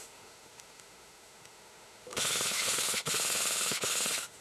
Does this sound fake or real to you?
fake